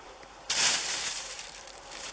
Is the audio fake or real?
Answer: fake